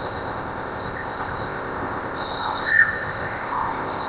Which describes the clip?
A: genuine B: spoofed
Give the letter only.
B